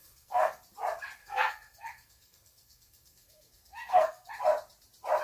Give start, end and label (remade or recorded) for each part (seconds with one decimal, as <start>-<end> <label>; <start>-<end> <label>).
0.0-0.6 remade; 0.6-1.2 recorded; 1.2-4.3 remade; 4.3-5.2 recorded